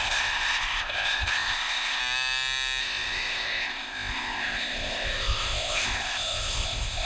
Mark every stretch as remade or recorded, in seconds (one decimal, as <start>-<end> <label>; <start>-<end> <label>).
0.0-2.0 remade; 2.0-2.8 recorded; 2.8-7.1 remade